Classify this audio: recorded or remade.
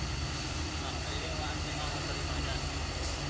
recorded